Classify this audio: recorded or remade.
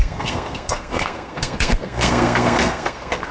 remade